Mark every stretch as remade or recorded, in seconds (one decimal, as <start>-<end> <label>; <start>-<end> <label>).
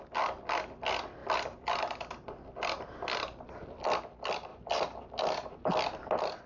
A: 0.0-4.5 recorded; 4.5-5.0 remade; 5.0-6.5 recorded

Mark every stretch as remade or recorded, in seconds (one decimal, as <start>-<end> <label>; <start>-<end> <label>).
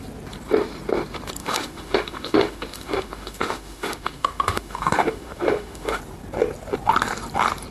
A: 0.0-1.4 recorded; 1.4-6.0 remade; 6.0-7.7 recorded